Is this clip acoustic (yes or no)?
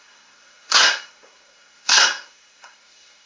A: no